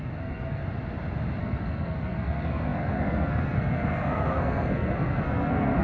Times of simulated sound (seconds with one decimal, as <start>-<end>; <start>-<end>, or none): 0.0-0.6; 1.4-5.8